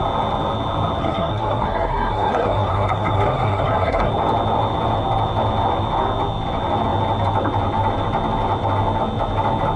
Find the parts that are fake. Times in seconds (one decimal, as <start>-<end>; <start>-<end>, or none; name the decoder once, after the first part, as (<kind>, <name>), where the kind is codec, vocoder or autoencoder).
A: 1.0-4.1 (codec, SNAC)

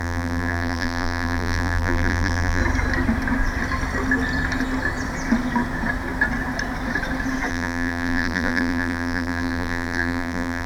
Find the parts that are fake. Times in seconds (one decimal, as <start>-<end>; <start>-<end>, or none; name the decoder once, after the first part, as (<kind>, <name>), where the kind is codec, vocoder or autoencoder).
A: 0.0-2.6 (vocoder, BigVGAN v2); 7.5-10.7

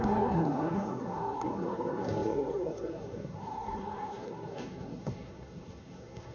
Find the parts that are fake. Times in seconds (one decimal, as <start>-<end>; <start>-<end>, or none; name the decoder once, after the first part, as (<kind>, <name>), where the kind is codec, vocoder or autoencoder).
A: 0.0-6.3 (codec, SNAC)

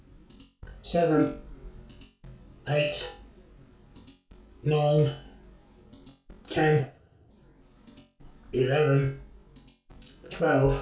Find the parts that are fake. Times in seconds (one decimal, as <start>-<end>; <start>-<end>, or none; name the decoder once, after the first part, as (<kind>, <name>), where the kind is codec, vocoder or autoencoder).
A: 6.8-7.3 (codec, ZipCodec)

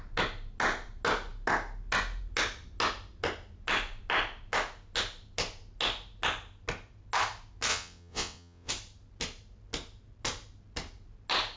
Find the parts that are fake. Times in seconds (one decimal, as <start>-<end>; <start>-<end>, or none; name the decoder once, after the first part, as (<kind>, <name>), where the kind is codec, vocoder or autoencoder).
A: 7.7-8.7 (vocoder, WaveNeXt)

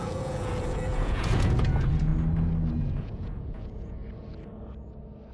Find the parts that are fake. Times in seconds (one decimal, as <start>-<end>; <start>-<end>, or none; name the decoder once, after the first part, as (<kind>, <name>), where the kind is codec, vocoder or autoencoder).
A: 0.0-2.1 (vocoder, Vocos); 2.8-4.0